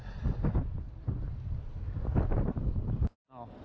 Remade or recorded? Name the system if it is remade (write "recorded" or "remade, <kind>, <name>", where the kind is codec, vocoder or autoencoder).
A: recorded